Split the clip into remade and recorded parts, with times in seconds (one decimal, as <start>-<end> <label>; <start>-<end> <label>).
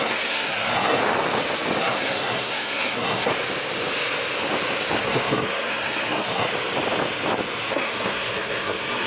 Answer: 0.0-1.0 remade; 1.0-1.8 recorded; 1.8-3.3 remade; 3.3-5.0 recorded; 5.0-6.5 remade; 6.5-7.7 recorded; 7.7-9.1 remade